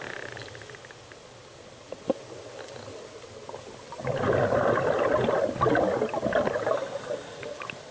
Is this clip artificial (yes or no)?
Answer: no